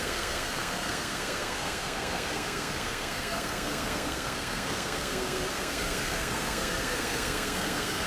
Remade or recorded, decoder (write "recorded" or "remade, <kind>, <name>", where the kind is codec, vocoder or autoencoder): remade, codec, SNAC